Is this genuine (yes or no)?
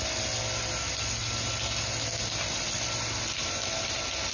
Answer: yes